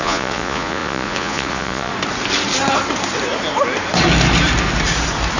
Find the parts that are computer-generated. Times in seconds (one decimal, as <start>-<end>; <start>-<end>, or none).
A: 0.0-1.9

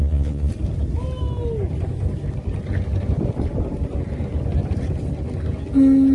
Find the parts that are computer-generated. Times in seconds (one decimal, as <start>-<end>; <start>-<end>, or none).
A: 0.0-0.5